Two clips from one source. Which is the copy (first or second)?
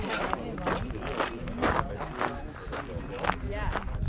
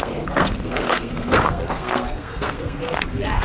second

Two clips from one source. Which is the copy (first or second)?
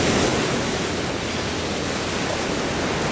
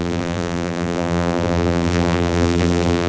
second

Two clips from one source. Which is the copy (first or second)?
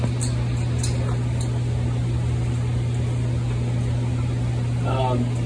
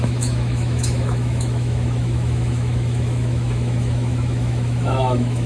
second